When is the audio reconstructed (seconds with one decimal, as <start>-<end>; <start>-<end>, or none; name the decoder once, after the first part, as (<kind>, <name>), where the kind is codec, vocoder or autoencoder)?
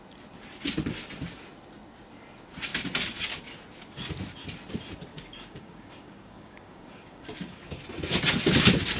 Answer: 5.1-7.8 (codec, DAC)